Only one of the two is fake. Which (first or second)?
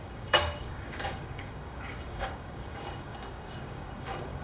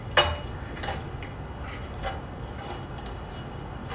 first